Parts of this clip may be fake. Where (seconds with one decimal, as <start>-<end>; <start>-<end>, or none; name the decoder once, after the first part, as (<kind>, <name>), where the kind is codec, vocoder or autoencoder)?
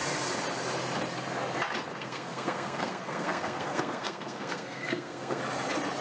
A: 1.9-5.4 (codec, SNAC)